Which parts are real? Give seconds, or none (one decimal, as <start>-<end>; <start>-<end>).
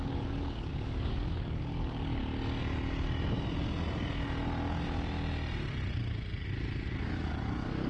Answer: 2.2-6.9